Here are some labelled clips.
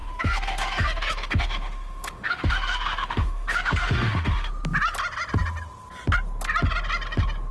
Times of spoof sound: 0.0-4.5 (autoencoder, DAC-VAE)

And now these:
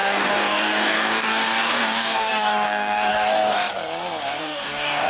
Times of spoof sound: 0.0-3.7 (codec, DAC); 4.4-5.1